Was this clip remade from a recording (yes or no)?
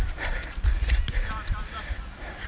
yes